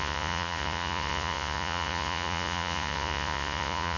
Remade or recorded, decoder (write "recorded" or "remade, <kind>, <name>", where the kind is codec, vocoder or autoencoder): remade, vocoder, Vocos